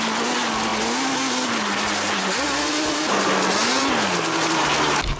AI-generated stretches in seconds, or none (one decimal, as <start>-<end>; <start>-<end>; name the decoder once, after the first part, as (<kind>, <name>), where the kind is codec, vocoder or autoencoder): none